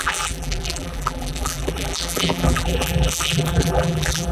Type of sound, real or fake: fake